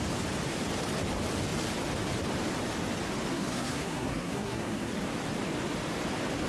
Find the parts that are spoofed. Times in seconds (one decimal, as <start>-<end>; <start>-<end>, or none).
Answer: 3.3-4.9